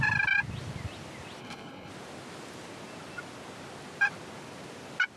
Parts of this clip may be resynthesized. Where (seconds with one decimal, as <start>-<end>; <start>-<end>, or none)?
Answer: 1.4-1.9